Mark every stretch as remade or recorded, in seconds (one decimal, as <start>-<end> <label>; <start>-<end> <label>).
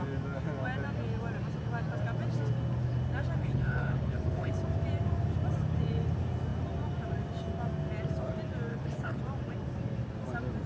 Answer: 0.0-3.4 recorded; 3.4-4.5 remade; 4.5-8.7 recorded; 8.7-9.2 remade; 9.2-10.7 recorded